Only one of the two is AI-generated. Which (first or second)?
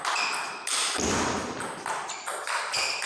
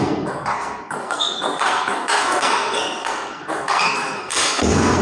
second